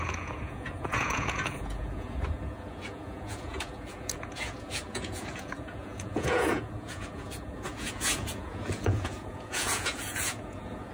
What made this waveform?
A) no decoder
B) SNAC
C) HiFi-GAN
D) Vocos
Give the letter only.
D